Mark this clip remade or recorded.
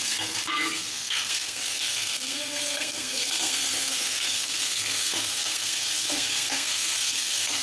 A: remade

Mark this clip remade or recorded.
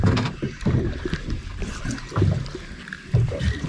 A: recorded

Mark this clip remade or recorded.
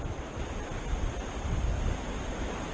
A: recorded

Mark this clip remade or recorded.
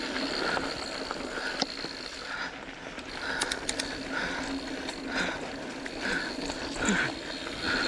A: recorded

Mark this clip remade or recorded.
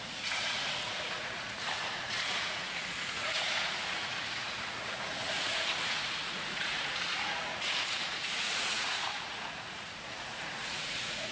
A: remade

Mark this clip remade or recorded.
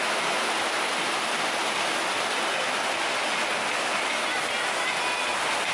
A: recorded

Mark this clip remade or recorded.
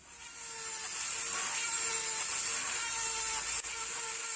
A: recorded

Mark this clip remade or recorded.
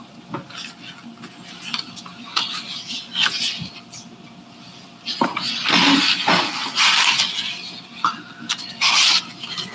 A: recorded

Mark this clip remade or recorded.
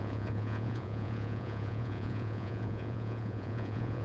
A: remade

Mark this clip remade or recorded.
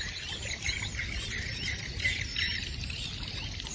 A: remade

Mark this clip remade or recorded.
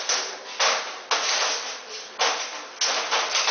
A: recorded